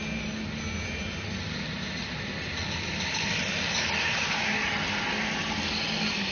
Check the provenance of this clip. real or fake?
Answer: real